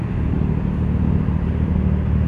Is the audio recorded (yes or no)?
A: yes